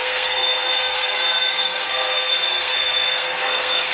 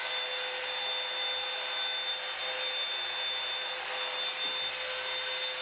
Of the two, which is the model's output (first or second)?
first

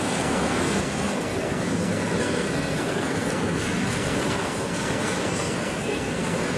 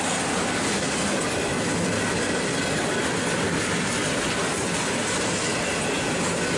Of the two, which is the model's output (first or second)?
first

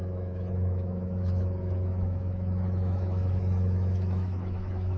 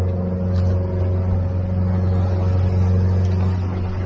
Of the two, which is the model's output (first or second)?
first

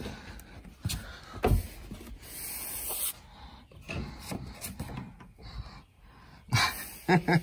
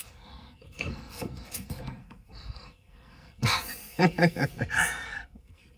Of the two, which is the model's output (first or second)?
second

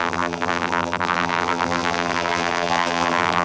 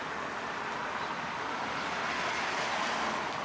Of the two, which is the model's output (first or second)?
first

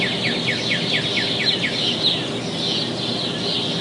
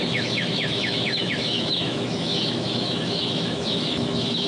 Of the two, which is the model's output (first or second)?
second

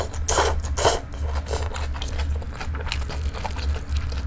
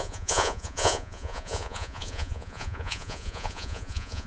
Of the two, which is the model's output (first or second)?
second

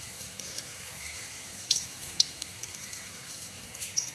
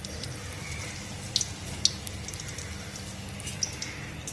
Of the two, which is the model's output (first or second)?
first